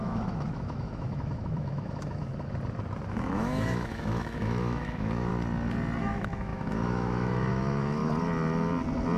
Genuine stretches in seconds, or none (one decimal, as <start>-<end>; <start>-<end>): 2.3-3.1; 5.3-6.0; 8.0-9.2